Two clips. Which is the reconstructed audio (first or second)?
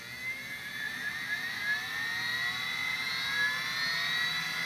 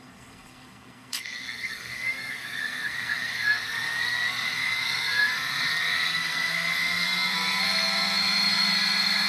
second